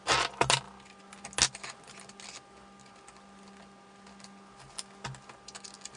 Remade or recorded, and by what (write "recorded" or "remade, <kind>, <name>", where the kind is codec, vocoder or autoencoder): recorded